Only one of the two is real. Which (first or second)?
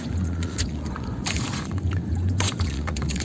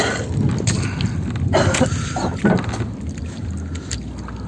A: second